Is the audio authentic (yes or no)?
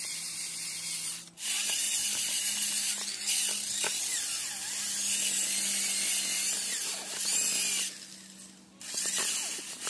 yes